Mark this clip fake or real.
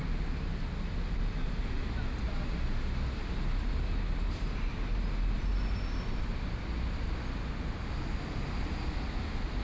real